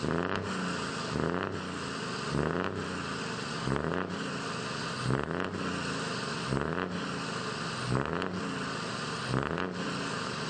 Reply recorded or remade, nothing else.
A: recorded